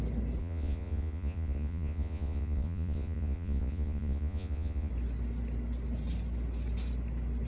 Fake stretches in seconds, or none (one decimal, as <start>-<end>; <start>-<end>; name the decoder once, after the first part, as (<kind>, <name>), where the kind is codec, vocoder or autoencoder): 0.4-4.9 (vocoder, Vocos)